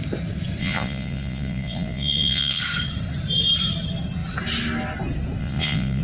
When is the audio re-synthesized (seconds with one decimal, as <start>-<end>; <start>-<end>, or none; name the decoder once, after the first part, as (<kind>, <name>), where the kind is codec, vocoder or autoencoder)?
0.6-2.6 (vocoder, Vocos); 5.4-6.0

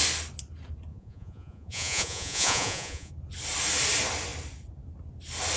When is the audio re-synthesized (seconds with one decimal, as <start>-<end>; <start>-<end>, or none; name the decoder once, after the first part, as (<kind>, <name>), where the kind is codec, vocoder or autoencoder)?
0.9-3.1 (vocoder, Vocos)

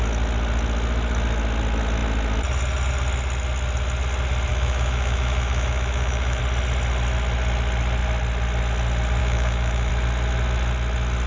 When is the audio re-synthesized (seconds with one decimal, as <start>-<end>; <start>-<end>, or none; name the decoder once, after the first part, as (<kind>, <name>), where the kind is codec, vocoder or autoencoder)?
4.5-6.4 (autoencoder, DAC-VAE); 9.2-9.9

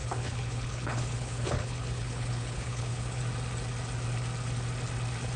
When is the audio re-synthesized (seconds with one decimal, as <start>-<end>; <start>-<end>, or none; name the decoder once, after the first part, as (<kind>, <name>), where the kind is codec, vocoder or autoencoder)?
0.0-3.2 (codec, HILCodec)

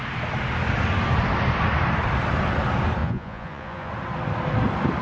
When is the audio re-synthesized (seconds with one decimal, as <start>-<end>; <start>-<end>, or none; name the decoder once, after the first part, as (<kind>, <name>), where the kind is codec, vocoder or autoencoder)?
3.0-3.9 (vocoder, Vocos)

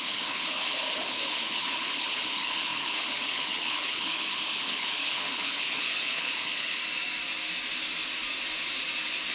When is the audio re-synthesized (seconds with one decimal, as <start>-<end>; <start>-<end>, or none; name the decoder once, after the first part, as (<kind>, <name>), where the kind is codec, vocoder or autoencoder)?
0.0-6.8 (codec, HILCodec)

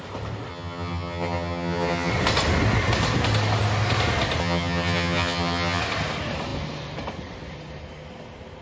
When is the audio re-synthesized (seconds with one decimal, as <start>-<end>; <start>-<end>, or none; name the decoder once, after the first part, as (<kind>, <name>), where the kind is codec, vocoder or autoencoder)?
0.5-2.1 (vocoder, HiFi-GAN); 4.4-5.8

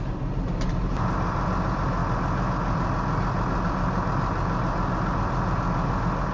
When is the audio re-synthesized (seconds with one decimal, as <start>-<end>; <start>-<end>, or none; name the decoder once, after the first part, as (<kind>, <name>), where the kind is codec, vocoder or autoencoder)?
none